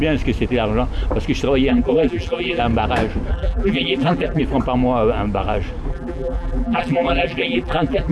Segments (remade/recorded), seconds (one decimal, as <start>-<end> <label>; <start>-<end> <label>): 0.0-1.7 recorded; 1.7-2.6 remade; 2.6-3.3 recorded; 3.3-4.4 remade; 4.4-5.9 recorded; 5.9-8.1 remade